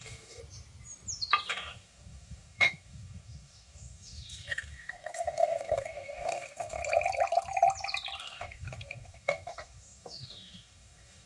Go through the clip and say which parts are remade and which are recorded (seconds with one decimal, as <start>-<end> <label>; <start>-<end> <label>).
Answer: 0.0-0.4 remade; 0.4-1.5 recorded; 1.5-6.8 remade; 6.8-8.2 recorded; 8.2-11.3 remade